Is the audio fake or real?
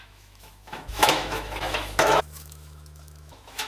fake